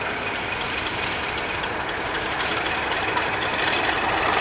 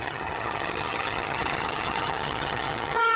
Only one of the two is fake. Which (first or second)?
second